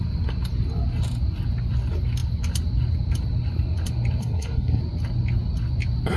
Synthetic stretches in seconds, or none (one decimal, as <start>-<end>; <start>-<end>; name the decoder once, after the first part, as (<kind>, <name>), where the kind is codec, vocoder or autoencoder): 4.2-4.8 (codec, SNAC)